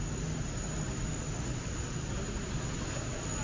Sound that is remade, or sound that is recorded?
recorded